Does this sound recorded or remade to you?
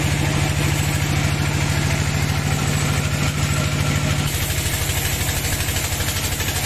recorded